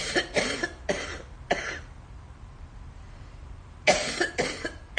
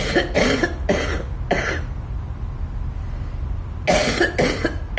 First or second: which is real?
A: second